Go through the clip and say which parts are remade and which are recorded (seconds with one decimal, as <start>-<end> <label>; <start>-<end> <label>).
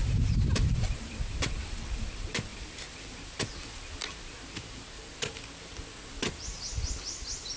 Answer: 0.0-7.6 recorded